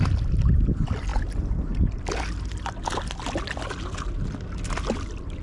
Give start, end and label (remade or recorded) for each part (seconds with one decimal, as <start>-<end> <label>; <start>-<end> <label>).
0.0-5.4 recorded